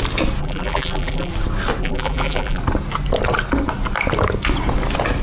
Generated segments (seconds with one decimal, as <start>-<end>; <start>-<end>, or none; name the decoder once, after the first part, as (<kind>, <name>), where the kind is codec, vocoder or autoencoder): 0.4-1.3 (vocoder, BigVGAN v2); 1.8-2.6